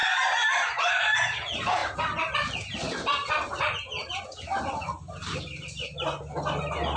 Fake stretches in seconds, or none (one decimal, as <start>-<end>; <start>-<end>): 1.8-6.0